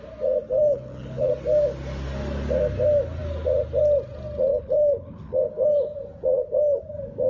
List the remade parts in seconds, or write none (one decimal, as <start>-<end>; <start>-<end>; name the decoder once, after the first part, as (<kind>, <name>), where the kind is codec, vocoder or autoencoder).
0.6-1.3 (codec, HILCodec); 4.5-5.4